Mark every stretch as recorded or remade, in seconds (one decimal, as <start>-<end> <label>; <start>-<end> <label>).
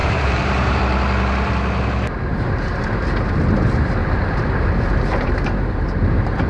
0.0-0.8 remade; 0.8-2.3 recorded; 2.3-3.3 remade; 3.3-4.0 recorded; 4.0-6.5 remade